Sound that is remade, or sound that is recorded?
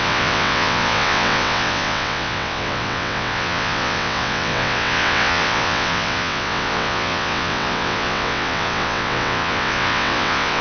remade